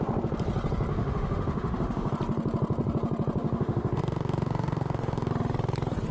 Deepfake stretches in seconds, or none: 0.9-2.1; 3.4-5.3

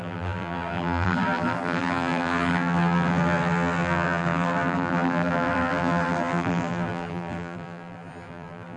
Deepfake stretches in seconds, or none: 0.0-8.8

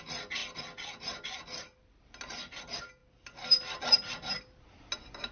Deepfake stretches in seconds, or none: none

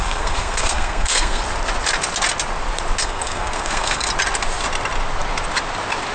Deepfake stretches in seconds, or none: 0.0-1.4; 3.0-4.1